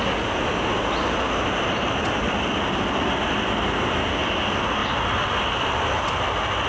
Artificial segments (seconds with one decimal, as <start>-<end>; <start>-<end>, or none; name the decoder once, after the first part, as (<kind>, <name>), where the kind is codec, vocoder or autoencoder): none